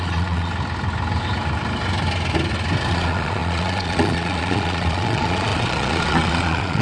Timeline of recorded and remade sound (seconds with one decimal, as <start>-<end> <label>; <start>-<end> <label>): 0.0-0.5 remade; 0.5-2.9 recorded; 2.9-6.8 remade